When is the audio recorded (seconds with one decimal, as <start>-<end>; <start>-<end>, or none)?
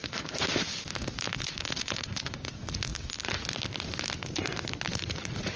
0.0-1.3; 2.9-4.9